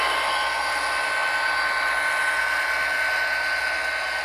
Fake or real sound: real